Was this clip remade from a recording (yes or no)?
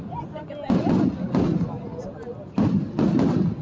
no